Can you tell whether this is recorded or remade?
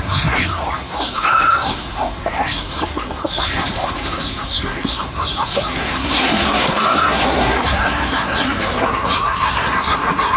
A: remade